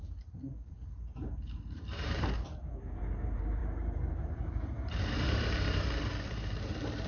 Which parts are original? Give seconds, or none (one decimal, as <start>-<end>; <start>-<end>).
none